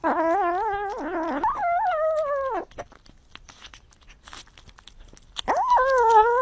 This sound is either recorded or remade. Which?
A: recorded